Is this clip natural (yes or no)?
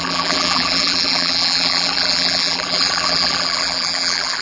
no